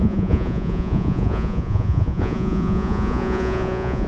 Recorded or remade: remade